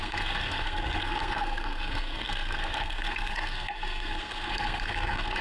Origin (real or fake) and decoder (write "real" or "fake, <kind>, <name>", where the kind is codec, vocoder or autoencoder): fake, codec, SNAC